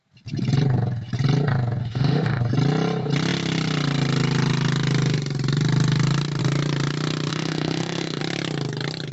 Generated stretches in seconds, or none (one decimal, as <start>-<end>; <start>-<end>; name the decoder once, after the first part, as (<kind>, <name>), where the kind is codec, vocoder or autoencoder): 1.8-2.4 (autoencoder, DAC-VAE); 7.3-8.2